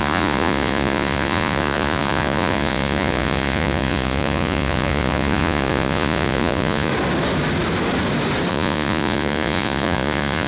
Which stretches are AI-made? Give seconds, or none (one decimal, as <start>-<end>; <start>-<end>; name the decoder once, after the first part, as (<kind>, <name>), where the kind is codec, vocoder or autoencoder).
0.0-6.9 (vocoder, Vocos); 8.5-10.5